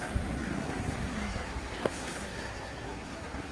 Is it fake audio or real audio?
fake